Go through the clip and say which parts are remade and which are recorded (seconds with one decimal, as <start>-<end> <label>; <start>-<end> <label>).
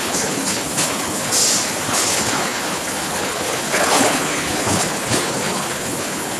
0.0-1.3 remade; 1.3-1.9 recorded; 1.9-6.4 remade